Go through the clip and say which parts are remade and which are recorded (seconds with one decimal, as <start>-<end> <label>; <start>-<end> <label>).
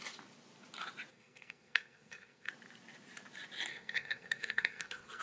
0.0-1.1 recorded; 1.1-2.5 remade; 2.5-3.7 recorded; 3.7-5.2 remade